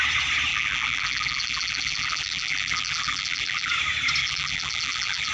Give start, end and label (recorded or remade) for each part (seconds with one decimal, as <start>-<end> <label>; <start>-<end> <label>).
0.0-0.5 recorded; 0.5-3.7 remade; 3.7-4.2 recorded; 4.2-5.3 remade